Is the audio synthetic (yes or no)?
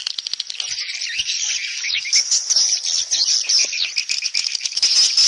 no